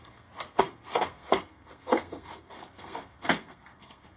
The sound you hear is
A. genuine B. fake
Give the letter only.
B